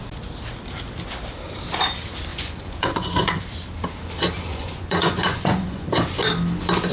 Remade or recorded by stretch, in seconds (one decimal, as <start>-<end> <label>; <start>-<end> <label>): 0.0-2.3 recorded; 2.3-3.4 remade; 3.4-4.5 recorded; 4.5-5.9 remade; 5.9-6.9 recorded